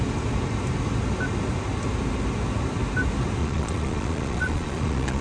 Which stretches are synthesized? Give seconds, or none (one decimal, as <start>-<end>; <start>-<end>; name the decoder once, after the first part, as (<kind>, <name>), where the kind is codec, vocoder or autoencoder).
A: 3.4-5.2 (vocoder, Vocos)

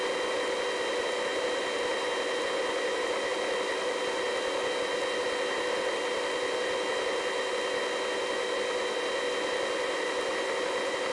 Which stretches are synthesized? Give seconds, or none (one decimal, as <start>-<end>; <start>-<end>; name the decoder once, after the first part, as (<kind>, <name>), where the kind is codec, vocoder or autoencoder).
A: none

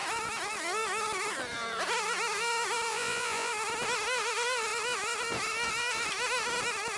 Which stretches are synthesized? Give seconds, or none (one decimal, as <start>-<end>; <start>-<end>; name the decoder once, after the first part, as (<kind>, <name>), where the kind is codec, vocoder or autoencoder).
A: 2.9-3.5 (vocoder, Vocos)

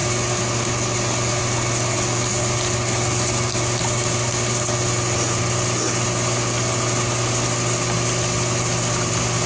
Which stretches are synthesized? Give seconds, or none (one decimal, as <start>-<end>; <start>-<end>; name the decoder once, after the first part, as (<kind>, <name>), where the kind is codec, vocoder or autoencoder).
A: none